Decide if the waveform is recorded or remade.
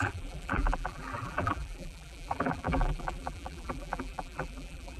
remade